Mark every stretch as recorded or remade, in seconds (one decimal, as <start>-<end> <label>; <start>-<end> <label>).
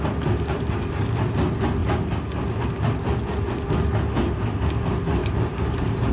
0.0-5.2 recorded; 5.2-6.1 remade